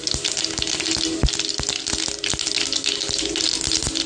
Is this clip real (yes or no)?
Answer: yes